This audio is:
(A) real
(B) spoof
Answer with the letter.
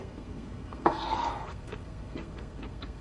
B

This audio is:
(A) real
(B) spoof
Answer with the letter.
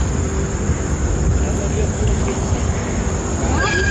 B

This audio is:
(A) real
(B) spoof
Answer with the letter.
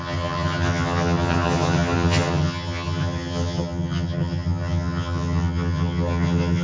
B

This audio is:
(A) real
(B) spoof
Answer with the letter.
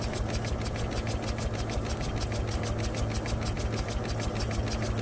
A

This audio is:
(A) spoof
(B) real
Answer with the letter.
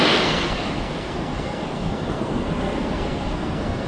A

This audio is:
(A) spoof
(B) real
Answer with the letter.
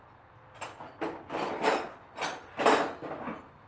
B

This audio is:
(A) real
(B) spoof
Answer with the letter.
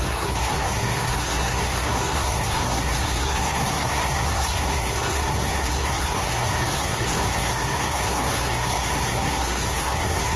B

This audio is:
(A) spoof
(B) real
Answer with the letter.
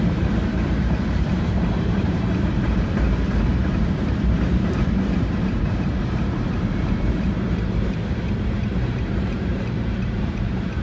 A